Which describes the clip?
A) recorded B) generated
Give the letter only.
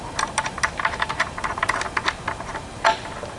A